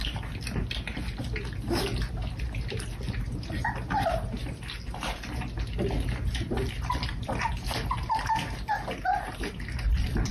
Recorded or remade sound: recorded